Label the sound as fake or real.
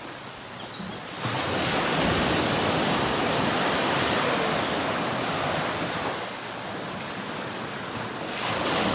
real